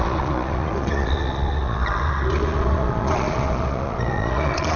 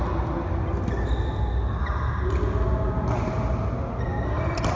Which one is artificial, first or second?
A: first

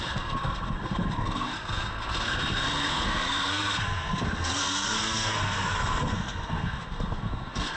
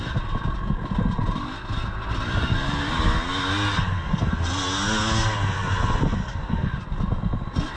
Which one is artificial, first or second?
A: first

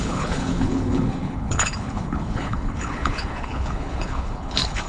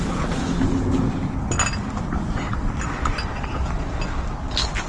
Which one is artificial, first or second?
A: first